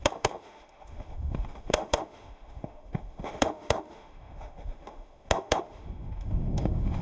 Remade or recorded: remade